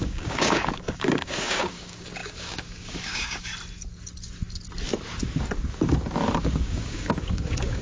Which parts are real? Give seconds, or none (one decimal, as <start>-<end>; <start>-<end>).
3.5-6.4